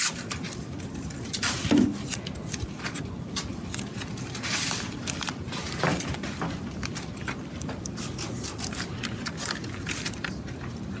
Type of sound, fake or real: fake